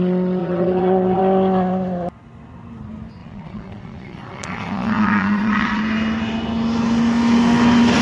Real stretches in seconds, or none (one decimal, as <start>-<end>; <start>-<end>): 0.0-0.4; 1.2-3.2; 5.8-8.0